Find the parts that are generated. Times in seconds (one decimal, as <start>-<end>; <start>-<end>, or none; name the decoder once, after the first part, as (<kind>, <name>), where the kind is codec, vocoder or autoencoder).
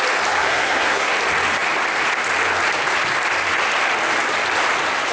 0.4-1.1 (codec, SNAC)